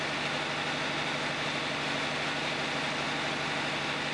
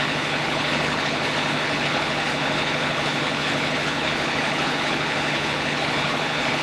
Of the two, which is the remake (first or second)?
second